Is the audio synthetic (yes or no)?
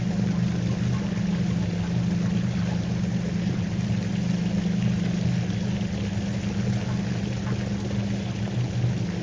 no